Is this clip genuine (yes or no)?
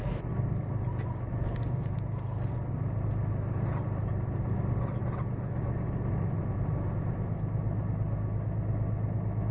yes